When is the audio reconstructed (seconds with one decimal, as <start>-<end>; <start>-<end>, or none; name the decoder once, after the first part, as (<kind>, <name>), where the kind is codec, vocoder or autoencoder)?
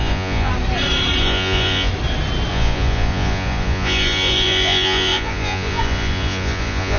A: 0.0-0.5 (vocoder, Vocos); 1.2-1.9; 2.5-7.0